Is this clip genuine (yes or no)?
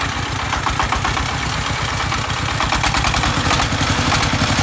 yes